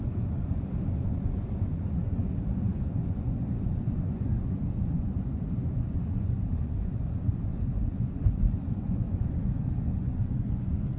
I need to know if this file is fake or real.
fake